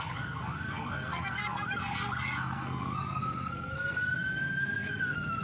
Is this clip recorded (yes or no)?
no